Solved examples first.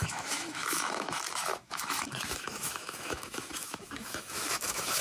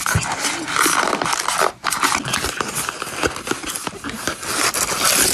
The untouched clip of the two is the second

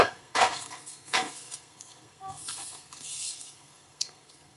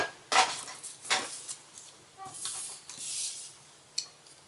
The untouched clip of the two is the second